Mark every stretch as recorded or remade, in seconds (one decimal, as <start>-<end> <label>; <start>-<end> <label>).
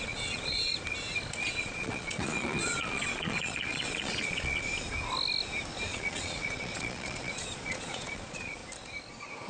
0.0-0.7 remade; 0.7-1.5 recorded; 1.5-4.7 remade; 4.7-5.9 recorded; 5.9-8.6 remade; 8.6-9.1 recorded; 9.1-9.5 remade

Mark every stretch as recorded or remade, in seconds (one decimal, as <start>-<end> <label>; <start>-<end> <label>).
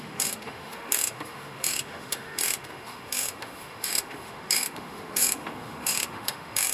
0.0-6.7 remade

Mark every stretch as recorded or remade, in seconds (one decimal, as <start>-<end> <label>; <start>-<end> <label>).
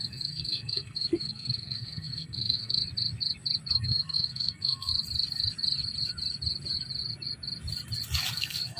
0.0-2.8 remade; 2.8-3.7 recorded; 3.7-4.9 remade; 4.9-8.3 recorded; 8.3-8.8 remade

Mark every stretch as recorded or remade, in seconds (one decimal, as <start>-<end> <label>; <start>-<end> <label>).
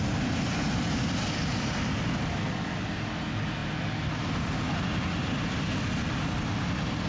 0.0-7.1 recorded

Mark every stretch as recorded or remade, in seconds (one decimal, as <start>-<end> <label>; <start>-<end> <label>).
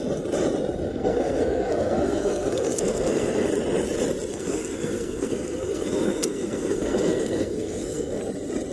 0.0-0.9 recorded; 0.9-3.5 remade; 3.5-4.3 recorded; 4.3-8.2 remade; 8.2-8.7 recorded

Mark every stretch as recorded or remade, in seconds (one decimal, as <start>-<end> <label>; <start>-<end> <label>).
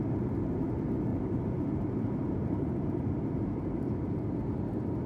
0.0-1.1 recorded; 1.1-4.2 remade; 4.2-5.1 recorded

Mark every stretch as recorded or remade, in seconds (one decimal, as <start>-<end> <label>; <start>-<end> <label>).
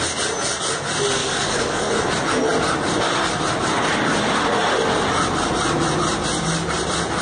0.0-1.2 recorded; 1.2-1.9 remade; 1.9-7.2 recorded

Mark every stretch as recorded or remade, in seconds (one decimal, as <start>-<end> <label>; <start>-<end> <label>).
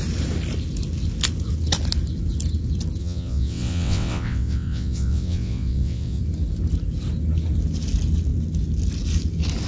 0.0-3.0 recorded; 3.0-6.2 remade; 6.2-9.7 recorded